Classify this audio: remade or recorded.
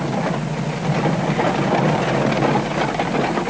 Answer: recorded